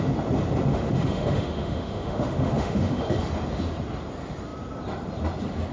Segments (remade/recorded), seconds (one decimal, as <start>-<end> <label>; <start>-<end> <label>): 0.0-0.7 recorded; 0.7-3.0 remade; 3.0-5.7 recorded